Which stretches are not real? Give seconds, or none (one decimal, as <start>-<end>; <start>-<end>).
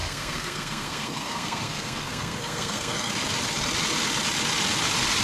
0.0-3.1